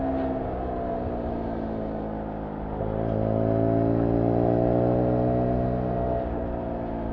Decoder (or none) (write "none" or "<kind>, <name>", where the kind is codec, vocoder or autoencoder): none